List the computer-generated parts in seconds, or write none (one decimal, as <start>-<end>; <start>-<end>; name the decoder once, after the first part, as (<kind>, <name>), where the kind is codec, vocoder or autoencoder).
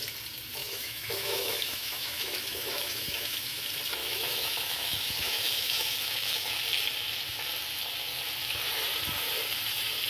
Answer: 0.6-3.6 (autoencoder, DAC-VAE); 4.0-6.6